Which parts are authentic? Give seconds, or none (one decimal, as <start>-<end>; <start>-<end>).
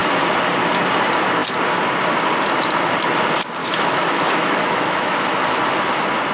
0.0-3.6; 5.5-6.3